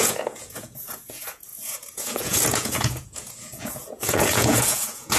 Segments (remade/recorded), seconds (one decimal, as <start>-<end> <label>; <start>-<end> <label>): 0.0-5.2 remade